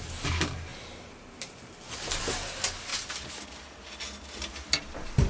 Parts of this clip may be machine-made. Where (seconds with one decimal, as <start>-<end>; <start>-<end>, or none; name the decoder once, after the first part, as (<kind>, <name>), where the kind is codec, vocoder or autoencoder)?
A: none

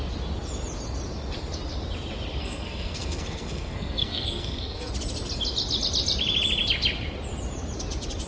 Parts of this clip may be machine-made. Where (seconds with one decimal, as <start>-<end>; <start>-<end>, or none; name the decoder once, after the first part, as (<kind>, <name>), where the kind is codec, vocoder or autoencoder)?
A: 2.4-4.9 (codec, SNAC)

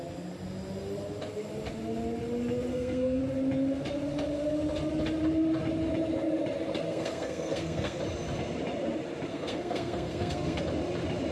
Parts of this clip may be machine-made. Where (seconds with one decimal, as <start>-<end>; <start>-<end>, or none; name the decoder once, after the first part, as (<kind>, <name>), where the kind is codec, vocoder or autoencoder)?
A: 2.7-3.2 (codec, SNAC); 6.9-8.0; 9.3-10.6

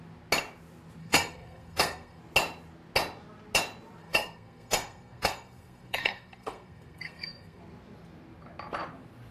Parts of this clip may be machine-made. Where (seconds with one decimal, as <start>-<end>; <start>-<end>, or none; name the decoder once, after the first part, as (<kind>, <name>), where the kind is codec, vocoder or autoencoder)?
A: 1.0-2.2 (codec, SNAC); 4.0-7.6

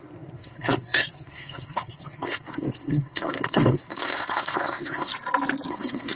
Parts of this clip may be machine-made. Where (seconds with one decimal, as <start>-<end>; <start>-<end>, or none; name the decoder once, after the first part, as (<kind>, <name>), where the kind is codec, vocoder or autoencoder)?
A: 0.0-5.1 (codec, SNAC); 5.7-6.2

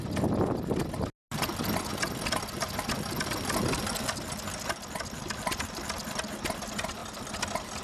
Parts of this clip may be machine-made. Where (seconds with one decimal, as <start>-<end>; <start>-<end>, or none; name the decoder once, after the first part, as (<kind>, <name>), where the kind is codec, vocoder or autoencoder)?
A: none